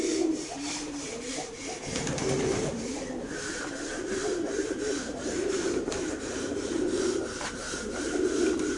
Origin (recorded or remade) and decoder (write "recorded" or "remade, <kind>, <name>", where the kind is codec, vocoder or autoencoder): remade, vocoder, BigVGAN v2